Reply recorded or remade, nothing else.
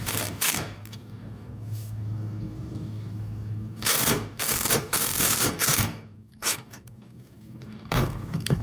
remade